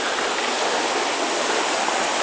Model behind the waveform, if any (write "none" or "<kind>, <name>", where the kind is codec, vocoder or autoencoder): none